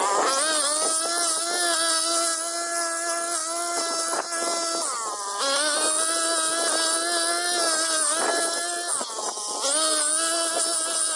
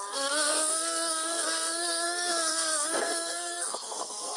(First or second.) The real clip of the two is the first